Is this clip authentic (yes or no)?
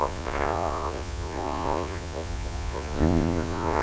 no